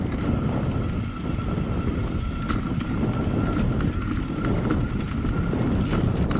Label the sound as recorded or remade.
recorded